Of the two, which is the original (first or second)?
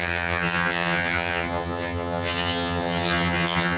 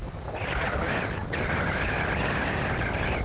second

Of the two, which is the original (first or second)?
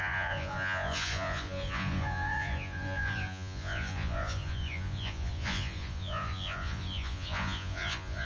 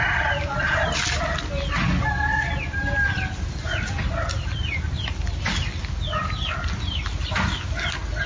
second